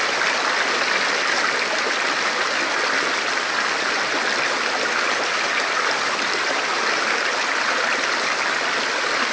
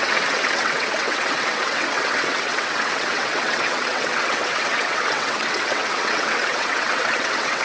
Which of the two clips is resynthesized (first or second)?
second